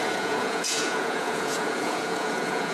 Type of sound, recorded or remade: remade